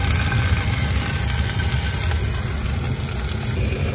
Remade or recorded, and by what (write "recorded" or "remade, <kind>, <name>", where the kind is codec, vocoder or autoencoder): recorded